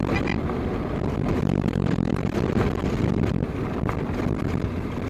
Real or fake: real